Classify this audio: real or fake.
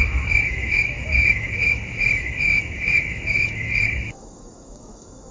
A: fake